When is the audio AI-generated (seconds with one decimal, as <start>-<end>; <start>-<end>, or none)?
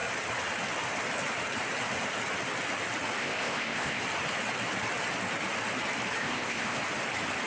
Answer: 3.2-4.0; 6.2-6.8